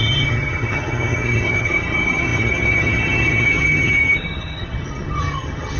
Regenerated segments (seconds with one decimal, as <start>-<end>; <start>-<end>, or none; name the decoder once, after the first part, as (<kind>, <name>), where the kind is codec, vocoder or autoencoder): 0.0-5.8 (vocoder, HiFi-GAN)